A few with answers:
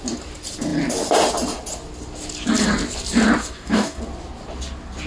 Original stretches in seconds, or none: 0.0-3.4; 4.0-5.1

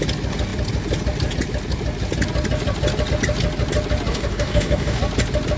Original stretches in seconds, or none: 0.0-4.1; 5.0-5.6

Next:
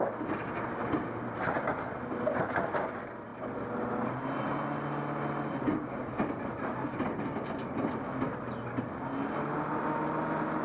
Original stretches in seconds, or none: 0.0-10.6

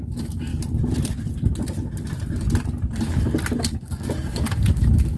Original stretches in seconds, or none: 0.5-3.6